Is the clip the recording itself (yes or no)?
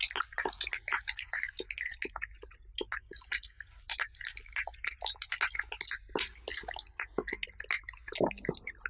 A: yes